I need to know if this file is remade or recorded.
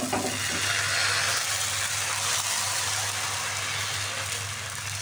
recorded